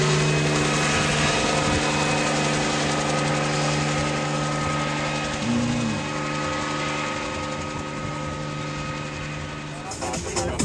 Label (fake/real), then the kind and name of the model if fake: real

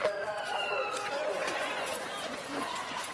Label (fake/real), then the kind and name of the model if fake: fake, vocoder, Vocos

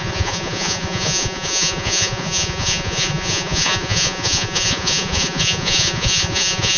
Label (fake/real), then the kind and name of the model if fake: fake, vocoder, Vocos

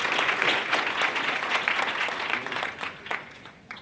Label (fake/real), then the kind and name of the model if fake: fake, vocoder, Vocos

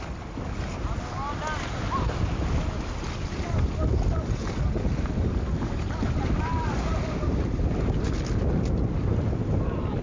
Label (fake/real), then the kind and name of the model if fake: real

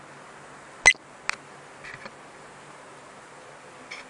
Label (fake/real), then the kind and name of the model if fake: real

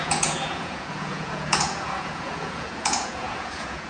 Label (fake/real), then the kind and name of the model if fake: fake, vocoder, Vocos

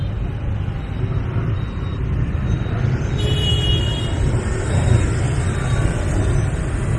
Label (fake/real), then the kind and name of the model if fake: real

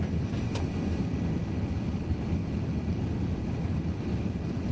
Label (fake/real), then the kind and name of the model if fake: real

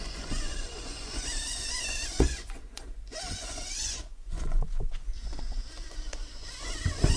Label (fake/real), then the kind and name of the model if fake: fake, vocoder, Vocos